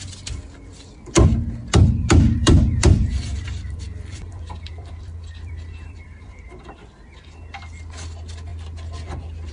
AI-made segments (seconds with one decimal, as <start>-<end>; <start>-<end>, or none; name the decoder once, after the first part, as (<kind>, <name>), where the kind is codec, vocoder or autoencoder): 2.4-6.5 (vocoder, BigVGAN v2)